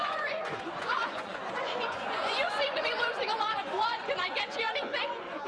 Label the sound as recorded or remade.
remade